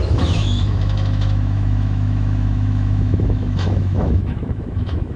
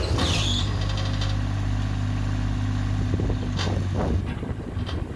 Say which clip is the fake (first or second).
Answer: first